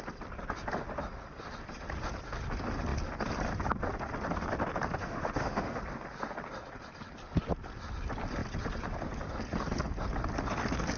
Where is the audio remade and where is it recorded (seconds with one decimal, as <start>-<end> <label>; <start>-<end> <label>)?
0.0-5.0 recorded; 5.0-5.8 remade; 5.8-11.0 recorded